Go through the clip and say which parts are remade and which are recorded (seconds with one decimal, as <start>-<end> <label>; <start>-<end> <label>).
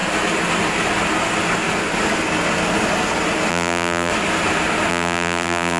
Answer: 0.0-3.5 recorded; 3.5-4.1 remade; 4.1-4.9 recorded; 4.9-5.8 remade